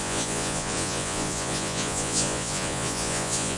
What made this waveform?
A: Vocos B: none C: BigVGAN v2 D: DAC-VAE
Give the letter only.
A